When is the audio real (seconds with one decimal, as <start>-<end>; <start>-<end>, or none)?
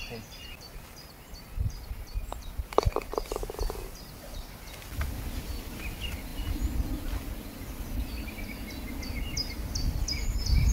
0.0-10.7